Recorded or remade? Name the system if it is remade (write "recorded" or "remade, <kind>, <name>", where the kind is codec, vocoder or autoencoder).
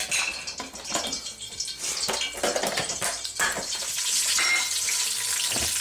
recorded